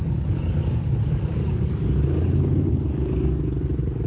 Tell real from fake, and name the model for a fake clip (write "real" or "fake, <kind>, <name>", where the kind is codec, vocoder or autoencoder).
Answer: fake, codec, DAC